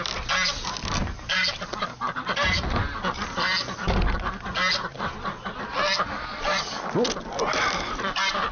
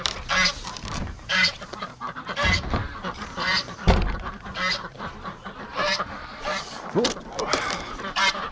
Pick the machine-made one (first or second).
second